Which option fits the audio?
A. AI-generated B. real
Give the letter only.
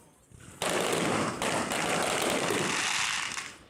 B